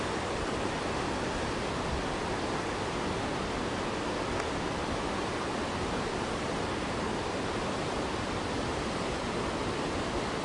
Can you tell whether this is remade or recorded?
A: recorded